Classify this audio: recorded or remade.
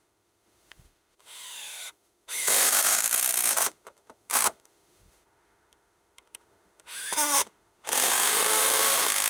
remade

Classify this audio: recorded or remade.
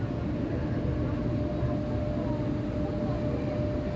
recorded